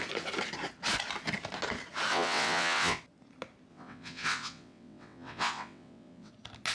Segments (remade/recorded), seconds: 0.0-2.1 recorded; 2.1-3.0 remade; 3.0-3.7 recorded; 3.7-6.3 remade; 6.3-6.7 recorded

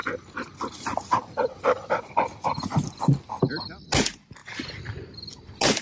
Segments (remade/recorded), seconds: 0.0-5.8 recorded

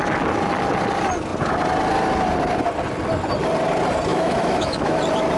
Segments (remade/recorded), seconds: 0.0-4.1 recorded; 4.1-5.0 remade; 5.0-5.4 recorded

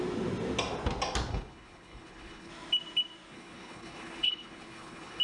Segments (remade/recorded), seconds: 0.0-1.3 recorded; 1.3-2.5 remade; 2.5-3.3 recorded; 3.3-5.2 remade